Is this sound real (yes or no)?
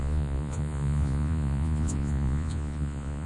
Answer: no